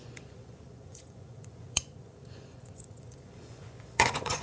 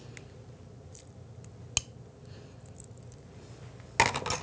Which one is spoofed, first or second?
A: first